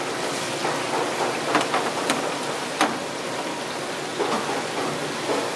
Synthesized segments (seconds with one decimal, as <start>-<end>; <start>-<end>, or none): 4.1-4.9